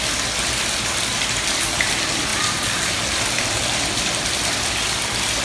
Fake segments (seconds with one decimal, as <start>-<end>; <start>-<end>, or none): none